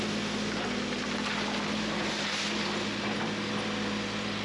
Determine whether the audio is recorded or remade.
recorded